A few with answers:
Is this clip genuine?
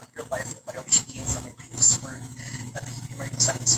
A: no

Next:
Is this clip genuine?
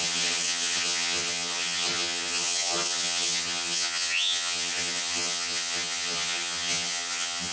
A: no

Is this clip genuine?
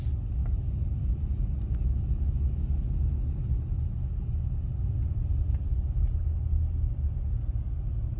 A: yes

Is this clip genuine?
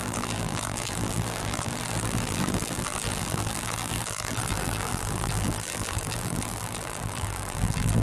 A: no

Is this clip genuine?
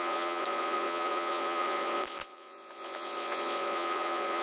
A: no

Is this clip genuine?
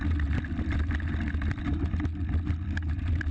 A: yes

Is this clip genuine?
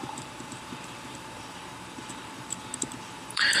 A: no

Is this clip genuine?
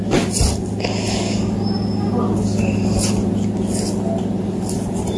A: yes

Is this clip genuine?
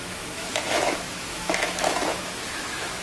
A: no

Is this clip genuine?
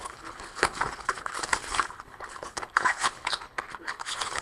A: no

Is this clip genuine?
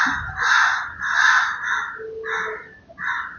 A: yes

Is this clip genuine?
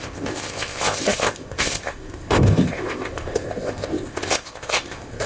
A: no